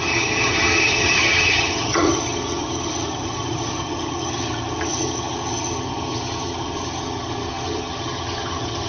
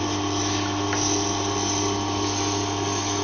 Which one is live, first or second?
second